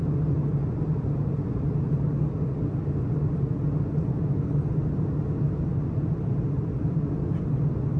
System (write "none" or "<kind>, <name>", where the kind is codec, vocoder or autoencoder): none